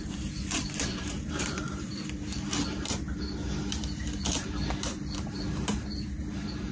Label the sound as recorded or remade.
remade